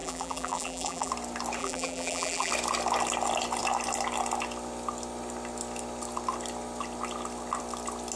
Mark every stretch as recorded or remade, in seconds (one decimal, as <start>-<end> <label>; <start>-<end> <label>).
0.0-1.1 remade; 1.1-1.6 recorded; 1.6-2.5 remade; 2.5-8.2 recorded